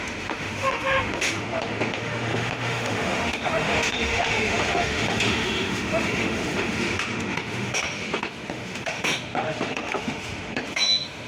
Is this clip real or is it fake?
fake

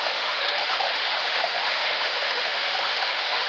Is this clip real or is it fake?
fake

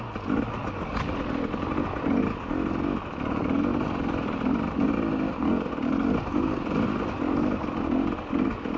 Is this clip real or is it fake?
real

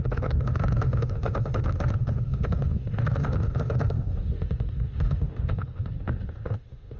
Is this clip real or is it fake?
fake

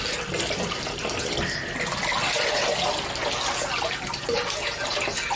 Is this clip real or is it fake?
real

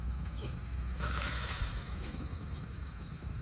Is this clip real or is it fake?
fake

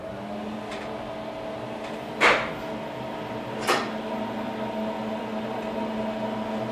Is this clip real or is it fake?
real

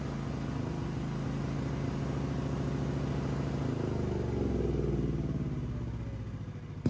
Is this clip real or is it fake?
real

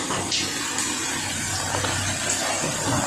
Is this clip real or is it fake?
real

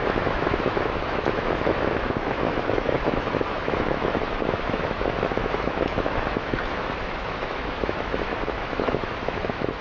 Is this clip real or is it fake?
fake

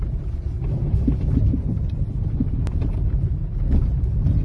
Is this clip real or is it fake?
real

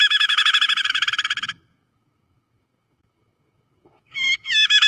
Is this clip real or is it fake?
fake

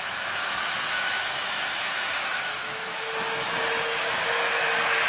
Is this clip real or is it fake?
fake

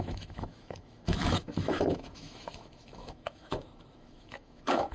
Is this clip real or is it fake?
fake